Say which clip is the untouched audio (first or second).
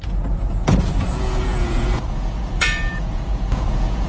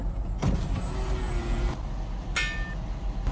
second